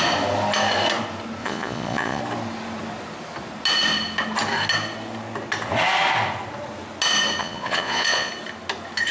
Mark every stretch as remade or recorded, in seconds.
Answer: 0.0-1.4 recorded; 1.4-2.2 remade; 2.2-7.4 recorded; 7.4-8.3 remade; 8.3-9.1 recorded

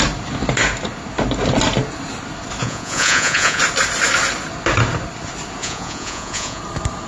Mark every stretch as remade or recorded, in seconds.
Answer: 0.0-2.6 recorded; 2.6-3.6 remade; 3.6-5.6 recorded; 5.6-6.6 remade; 6.6-7.1 recorded

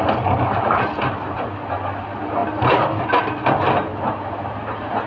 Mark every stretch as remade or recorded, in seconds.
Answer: 0.0-5.1 recorded

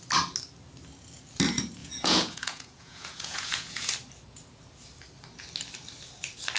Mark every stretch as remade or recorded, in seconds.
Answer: 0.0-1.8 recorded; 1.8-3.9 remade; 3.9-6.6 recorded